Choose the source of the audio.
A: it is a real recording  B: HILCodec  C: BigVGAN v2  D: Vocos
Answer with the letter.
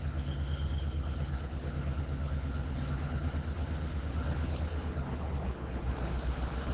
B